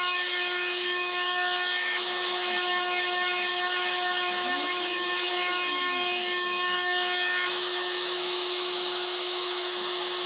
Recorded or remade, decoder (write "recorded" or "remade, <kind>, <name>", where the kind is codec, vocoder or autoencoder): remade, autoencoder, DAC-VAE